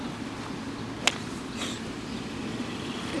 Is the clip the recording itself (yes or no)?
yes